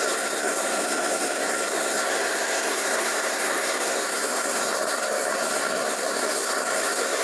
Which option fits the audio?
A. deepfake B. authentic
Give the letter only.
A